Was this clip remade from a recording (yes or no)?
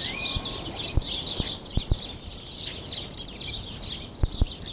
no